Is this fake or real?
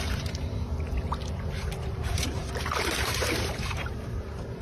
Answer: fake